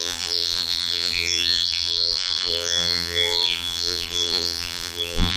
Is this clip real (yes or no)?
no